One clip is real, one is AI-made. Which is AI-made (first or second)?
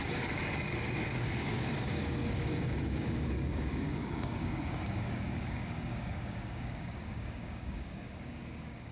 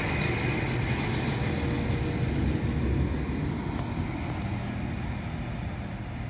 first